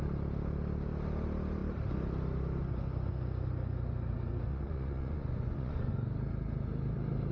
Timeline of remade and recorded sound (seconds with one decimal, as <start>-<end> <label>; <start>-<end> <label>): 0.0-4.5 recorded; 4.5-5.9 remade; 5.9-7.3 recorded